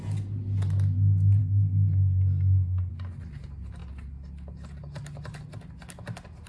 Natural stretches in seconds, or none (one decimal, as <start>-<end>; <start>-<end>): 0.0-1.4; 2.9-6.5